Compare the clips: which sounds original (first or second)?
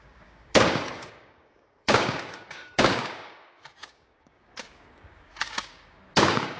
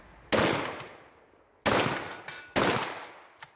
second